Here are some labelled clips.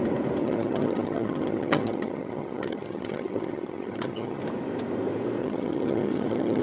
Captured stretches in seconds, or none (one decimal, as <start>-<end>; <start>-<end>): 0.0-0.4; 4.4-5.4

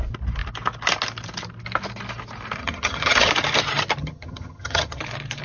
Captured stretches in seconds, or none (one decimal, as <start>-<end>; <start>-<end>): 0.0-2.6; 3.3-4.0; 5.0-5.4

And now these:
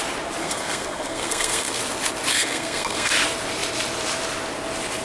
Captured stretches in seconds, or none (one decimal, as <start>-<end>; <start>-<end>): 0.0-0.4; 1.8-2.3; 3.1-5.0

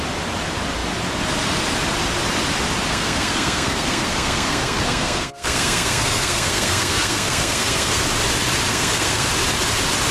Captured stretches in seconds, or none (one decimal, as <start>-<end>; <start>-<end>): 0.0-2.9; 8.0-8.7; 9.3-10.1

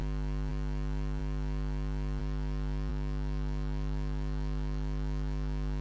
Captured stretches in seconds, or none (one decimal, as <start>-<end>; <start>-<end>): 0.0-2.9